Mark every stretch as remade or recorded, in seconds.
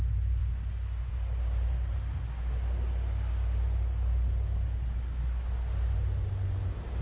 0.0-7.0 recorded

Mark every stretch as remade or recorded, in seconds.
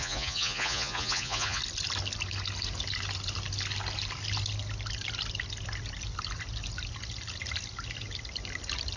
0.0-1.6 remade; 1.6-9.0 recorded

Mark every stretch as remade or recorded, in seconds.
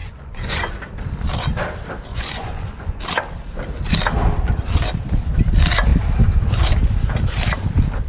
0.0-0.7 remade; 0.7-2.1 recorded; 2.1-3.0 remade; 3.0-8.1 recorded